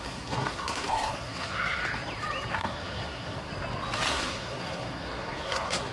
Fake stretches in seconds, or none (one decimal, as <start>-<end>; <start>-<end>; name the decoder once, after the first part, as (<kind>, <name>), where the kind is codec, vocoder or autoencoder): 0.0-1.8 (codec, SNAC); 2.5-3.5; 4.1-5.9